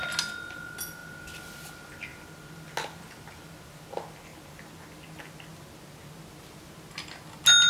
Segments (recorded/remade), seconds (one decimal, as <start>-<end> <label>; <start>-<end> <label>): 0.0-7.7 recorded